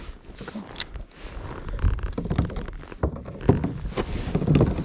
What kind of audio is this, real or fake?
real